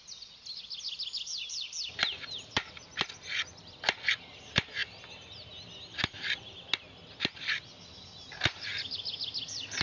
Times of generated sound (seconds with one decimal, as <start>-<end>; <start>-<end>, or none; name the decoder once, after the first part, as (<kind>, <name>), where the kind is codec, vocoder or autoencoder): none